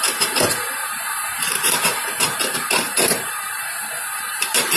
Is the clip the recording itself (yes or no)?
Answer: no